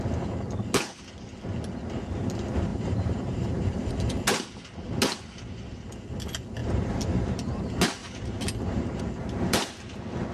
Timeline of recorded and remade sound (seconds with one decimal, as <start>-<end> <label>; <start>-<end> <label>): 0.0-2.7 recorded; 2.7-3.9 remade; 3.9-6.6 recorded; 6.6-7.6 remade; 7.6-8.0 recorded; 8.0-9.0 remade; 9.0-10.3 recorded